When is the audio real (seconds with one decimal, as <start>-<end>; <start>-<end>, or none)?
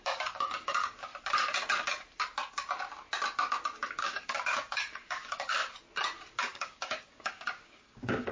1.1-3.9; 5.6-6.4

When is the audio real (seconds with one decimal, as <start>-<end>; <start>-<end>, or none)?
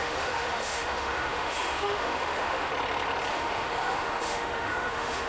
2.7-3.3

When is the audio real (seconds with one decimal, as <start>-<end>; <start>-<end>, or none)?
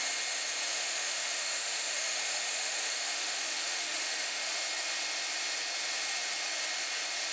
0.0-0.7; 4.5-7.3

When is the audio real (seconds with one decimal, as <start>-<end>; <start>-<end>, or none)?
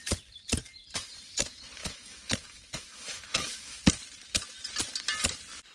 0.0-1.8; 3.8-5.7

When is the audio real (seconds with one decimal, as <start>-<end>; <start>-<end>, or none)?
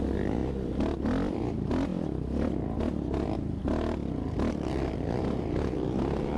0.0-6.4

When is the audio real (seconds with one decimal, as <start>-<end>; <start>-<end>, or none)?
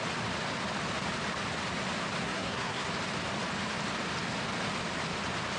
0.0-2.2; 2.9-5.6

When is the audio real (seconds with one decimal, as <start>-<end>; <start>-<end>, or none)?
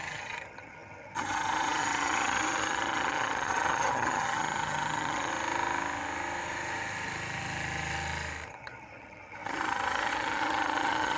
5.3-8.5